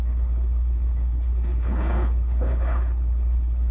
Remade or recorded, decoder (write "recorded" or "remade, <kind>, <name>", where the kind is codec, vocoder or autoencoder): remade, codec, HILCodec